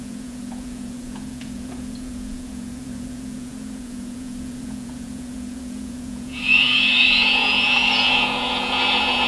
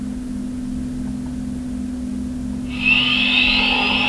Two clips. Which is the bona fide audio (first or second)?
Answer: second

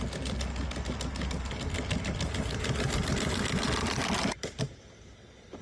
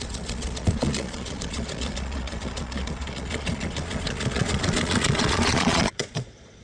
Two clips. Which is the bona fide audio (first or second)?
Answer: first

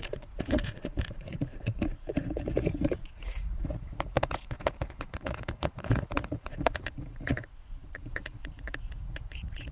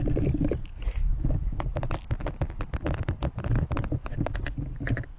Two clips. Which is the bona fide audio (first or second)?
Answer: second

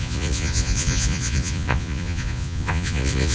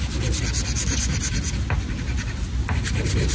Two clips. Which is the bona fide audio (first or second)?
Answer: second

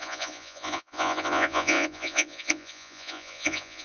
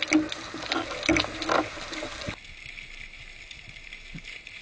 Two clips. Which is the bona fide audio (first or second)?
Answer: second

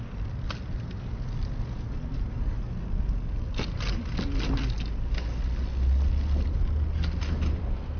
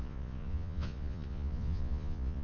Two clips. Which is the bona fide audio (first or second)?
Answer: first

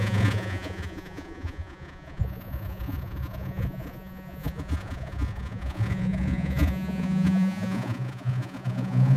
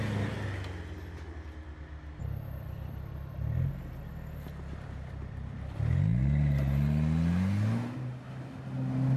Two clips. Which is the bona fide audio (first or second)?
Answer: second